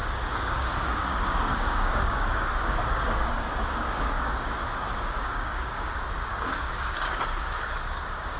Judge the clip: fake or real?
fake